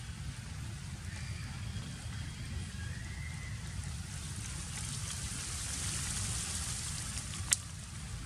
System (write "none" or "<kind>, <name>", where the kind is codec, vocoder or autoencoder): none